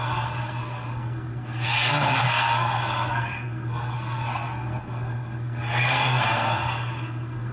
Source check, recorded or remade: remade